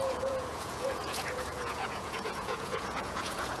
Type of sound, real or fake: fake